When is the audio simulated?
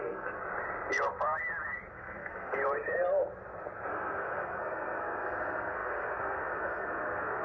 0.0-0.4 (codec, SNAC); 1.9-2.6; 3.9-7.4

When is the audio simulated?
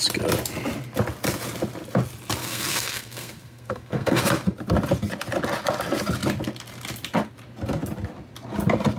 2.4-4.2 (codec, SNAC)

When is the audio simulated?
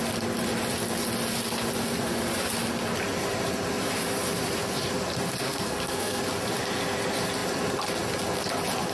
5.4-6.2 (codec, SNAC)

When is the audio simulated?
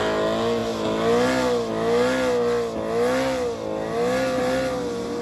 none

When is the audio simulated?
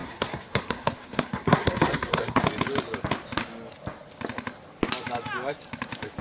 0.0-2.4 (codec, SNAC)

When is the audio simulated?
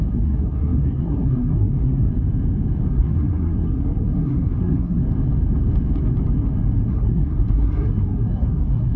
0.0-2.1 (codec, SNAC); 2.9-5.0; 6.8-9.0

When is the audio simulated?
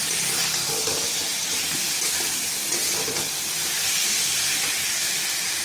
none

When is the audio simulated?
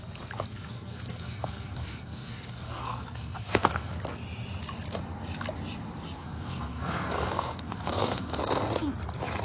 0.5-3.9 (codec, SNAC); 6.2-8.4